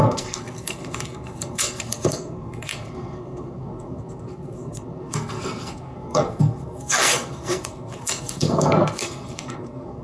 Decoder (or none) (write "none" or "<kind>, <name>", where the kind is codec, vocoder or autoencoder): codec, SNAC